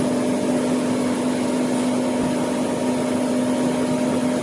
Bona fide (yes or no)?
yes